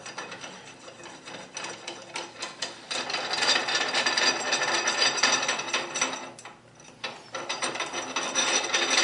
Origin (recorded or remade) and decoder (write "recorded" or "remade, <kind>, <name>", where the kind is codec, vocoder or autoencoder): recorded